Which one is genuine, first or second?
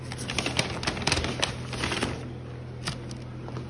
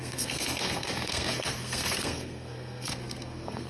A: first